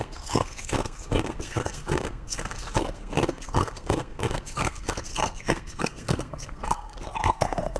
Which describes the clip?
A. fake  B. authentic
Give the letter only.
A